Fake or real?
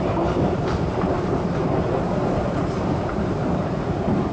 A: fake